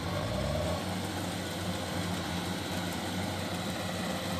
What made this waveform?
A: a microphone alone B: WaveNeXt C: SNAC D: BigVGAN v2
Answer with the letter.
A